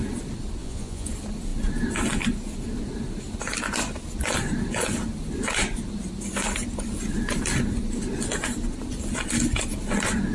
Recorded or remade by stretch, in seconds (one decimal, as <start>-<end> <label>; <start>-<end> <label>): 0.0-0.6 recorded; 0.6-1.1 remade; 1.1-10.3 recorded